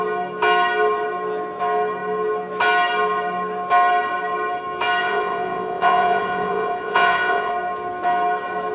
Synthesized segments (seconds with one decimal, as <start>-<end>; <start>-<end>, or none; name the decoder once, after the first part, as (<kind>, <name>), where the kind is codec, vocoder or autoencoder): 5.0-7.5 (vocoder, Vocos)

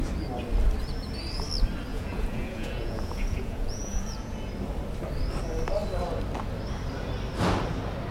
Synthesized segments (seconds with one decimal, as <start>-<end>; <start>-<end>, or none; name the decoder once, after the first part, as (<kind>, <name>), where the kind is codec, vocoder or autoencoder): 1.9-4.5 (vocoder, Vocos)

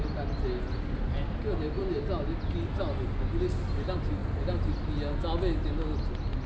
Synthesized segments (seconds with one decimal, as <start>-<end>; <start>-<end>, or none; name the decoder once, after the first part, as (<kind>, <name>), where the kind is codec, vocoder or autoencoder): none